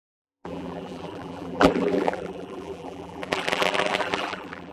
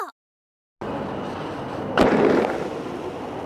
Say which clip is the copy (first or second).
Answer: first